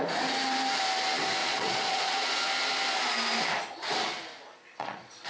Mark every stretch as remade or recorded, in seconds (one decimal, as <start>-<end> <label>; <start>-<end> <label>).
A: 0.0-1.4 recorded; 1.4-2.4 remade; 2.4-4.7 recorded; 4.7-5.3 remade

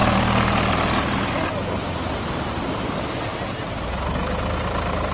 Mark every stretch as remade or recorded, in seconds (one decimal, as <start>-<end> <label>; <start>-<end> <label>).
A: 0.0-5.1 recorded

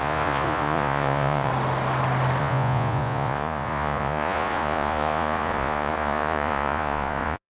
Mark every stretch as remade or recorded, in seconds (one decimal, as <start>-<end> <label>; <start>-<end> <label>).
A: 0.0-1.5 remade; 1.5-2.4 recorded; 2.4-7.5 remade

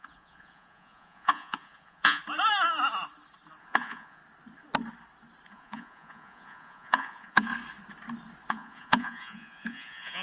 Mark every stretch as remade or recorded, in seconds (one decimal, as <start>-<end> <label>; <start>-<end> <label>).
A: 0.0-2.2 remade; 2.2-3.6 recorded; 3.6-4.2 remade; 4.2-5.5 recorded; 5.5-7.5 remade; 7.5-8.5 recorded; 8.5-10.2 remade

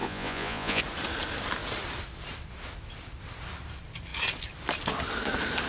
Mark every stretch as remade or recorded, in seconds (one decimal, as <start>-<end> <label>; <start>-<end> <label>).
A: 0.0-0.8 remade; 0.8-5.7 recorded

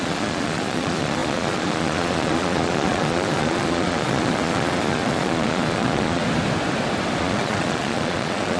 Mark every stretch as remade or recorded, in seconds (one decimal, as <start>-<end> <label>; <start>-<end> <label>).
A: 0.0-6.2 remade; 6.2-7.2 recorded; 7.2-8.6 remade